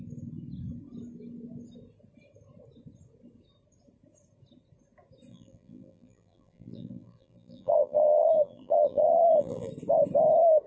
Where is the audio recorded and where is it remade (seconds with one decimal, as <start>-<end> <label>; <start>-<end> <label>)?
0.0-5.3 recorded; 5.3-9.7 remade; 9.7-10.7 recorded